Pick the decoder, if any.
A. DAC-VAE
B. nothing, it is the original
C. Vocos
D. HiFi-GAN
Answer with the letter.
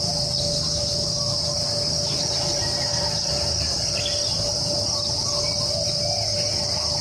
B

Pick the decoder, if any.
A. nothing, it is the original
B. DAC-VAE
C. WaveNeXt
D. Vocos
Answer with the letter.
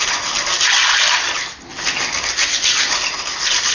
A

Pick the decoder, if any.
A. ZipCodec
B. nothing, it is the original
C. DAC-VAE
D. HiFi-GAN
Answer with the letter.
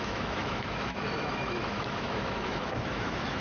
C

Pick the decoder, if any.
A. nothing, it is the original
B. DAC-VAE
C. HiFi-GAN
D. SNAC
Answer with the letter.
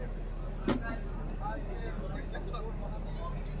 A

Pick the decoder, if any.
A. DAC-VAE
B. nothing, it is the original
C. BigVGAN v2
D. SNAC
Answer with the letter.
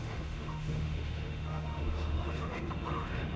A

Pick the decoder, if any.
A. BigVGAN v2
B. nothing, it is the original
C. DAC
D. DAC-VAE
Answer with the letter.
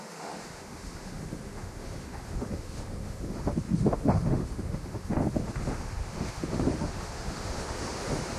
D